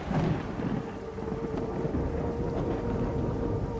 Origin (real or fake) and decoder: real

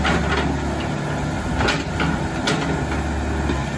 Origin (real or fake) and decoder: real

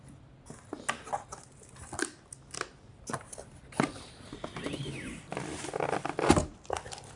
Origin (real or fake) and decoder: real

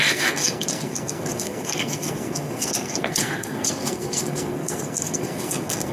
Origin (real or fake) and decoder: fake, codec, SNAC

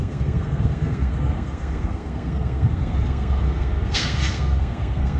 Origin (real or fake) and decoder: fake, codec, SNAC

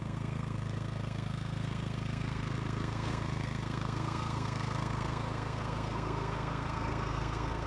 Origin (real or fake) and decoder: fake, codec, SNAC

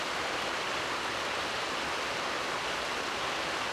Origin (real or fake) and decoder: real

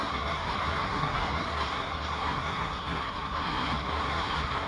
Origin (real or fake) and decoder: fake, codec, SNAC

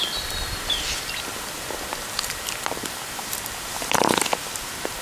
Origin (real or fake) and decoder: real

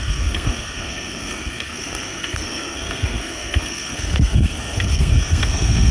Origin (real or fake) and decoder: fake, codec, SNAC